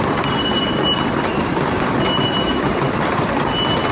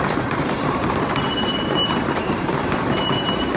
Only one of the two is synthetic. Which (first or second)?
second